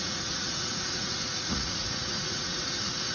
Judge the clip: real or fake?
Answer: fake